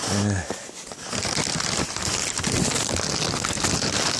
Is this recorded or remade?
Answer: recorded